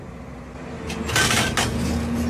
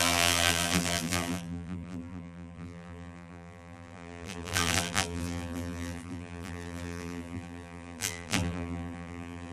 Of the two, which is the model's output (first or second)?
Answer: second